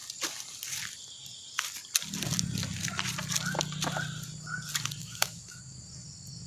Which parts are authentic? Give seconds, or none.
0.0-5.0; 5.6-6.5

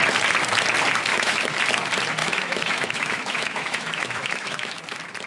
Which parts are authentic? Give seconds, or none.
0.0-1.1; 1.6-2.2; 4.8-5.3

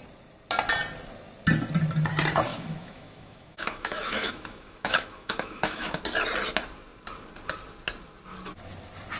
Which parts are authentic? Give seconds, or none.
0.0-2.5; 6.0-9.2